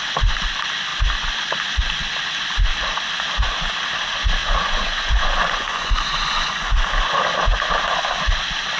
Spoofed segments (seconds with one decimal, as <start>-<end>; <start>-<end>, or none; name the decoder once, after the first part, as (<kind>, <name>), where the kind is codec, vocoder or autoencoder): 4.4-6.8 (vocoder, Vocos)